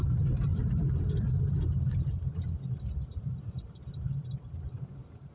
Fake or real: real